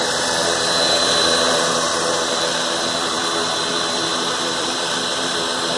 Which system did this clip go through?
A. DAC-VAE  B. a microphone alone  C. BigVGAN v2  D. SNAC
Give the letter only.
C